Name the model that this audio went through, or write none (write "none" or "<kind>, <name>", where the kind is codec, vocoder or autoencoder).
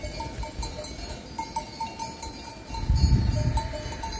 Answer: none